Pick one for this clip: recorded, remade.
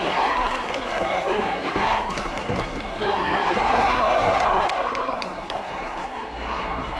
remade